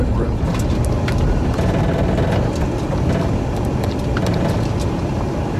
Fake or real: real